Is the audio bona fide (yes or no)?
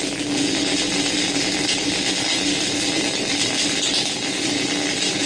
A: yes